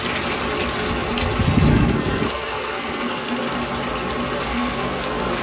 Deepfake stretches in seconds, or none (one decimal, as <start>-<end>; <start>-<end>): 1.7-3.4; 4.4-5.4